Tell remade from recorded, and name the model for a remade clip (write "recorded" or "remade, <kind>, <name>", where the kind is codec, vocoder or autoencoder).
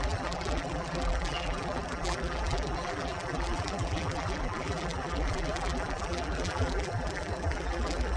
remade, vocoder, BigVGAN v2